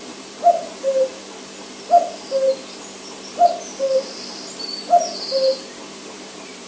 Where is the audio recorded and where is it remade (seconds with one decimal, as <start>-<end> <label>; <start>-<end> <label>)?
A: 0.0-1.1 remade; 1.1-3.9 recorded; 3.9-6.7 remade